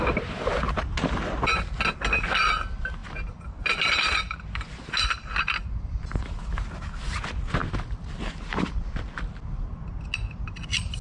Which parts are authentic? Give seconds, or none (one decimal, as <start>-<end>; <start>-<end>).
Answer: 0.0-11.0